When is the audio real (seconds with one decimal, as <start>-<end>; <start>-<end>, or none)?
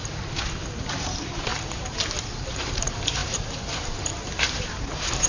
0.0-0.9